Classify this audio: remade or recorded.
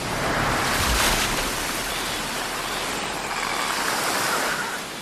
remade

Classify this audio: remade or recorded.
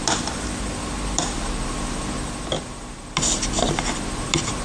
recorded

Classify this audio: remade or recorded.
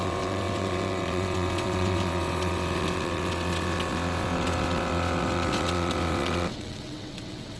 remade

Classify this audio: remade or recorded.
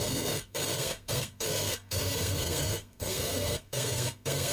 remade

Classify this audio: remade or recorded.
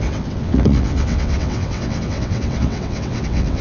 remade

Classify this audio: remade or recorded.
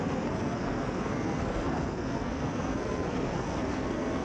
remade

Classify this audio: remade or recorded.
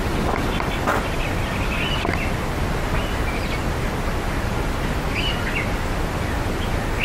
recorded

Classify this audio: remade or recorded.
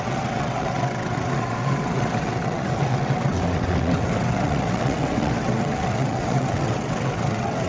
remade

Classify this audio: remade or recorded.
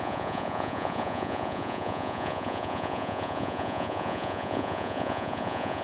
remade